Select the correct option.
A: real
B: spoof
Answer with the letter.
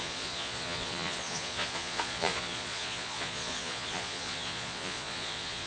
B